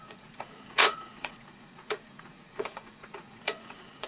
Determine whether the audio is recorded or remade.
remade